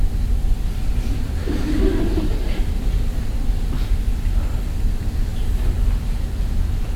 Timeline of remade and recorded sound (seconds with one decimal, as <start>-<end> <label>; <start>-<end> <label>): 0.0-7.0 recorded